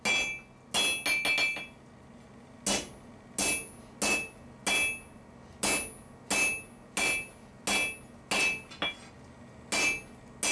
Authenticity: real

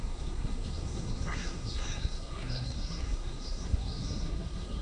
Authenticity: fake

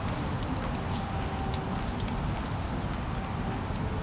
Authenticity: real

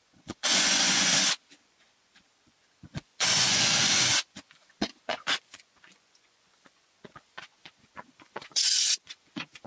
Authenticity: fake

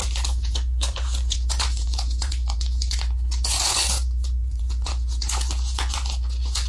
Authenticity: fake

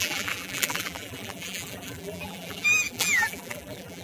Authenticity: fake